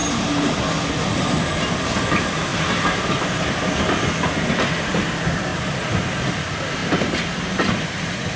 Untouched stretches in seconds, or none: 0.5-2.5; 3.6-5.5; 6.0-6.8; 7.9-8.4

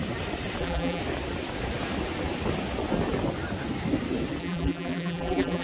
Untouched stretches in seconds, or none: 0.0-0.6; 1.0-4.4